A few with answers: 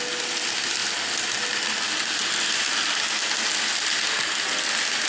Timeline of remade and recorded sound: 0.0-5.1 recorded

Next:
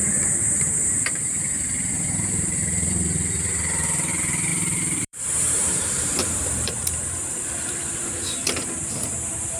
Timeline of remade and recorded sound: 0.0-2.9 remade; 2.9-4.5 recorded; 4.5-8.1 remade; 8.1-9.6 recorded

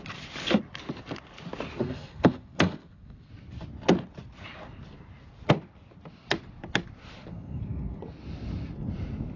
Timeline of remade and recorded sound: 0.0-1.8 recorded; 1.8-3.3 remade; 3.3-7.3 recorded; 7.3-8.0 remade; 8.0-9.4 recorded